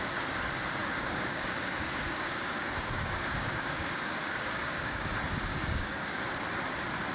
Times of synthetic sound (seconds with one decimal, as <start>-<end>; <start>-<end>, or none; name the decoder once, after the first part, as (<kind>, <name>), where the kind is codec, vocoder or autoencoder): 0.8-5.1 (codec, DAC); 5.5-6.2